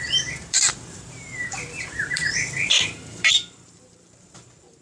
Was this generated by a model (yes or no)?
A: yes